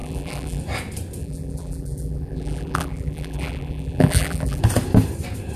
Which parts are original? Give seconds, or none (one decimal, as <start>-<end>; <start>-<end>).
0.6-1.2; 4.6-5.6